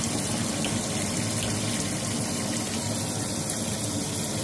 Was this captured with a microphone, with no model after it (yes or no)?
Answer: yes